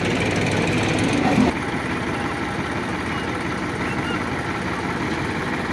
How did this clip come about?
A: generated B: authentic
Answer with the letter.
B